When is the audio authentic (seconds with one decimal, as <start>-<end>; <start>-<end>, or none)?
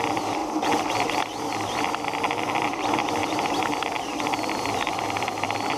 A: 0.4-2.4